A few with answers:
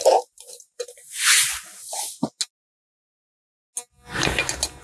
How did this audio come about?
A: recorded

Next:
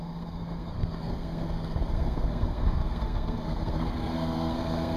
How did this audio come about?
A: remade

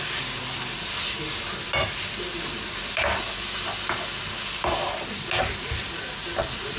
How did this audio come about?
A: recorded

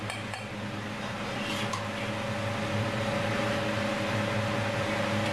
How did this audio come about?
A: recorded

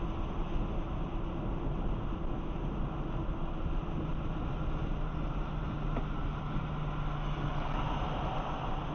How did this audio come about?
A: recorded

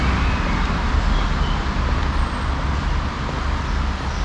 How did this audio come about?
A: recorded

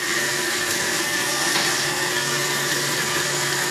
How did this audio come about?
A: remade